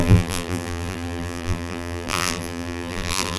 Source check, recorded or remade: remade